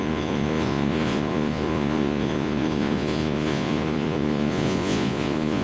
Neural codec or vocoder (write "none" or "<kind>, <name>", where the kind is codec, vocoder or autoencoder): vocoder, Vocos